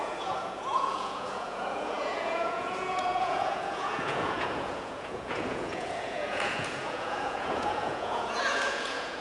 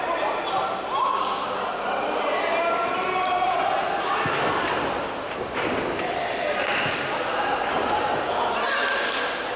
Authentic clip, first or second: second